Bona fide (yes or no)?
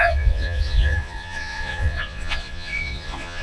no